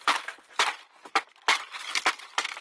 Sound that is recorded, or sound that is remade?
recorded